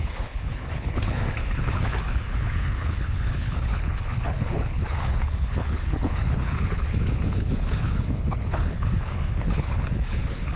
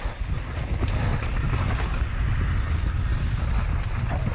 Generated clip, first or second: first